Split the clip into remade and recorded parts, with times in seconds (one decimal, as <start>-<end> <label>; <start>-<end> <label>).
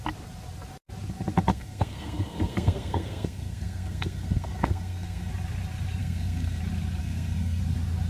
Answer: 0.0-1.5 recorded; 1.5-5.3 remade; 5.3-6.0 recorded; 6.0-6.6 remade; 6.6-7.0 recorded; 7.0-7.6 remade; 7.6-8.1 recorded